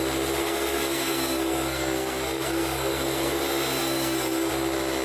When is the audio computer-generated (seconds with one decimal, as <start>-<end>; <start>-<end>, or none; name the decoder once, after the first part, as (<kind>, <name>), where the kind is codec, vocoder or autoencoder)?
0.4-3.4 (codec, SNAC); 3.8-4.5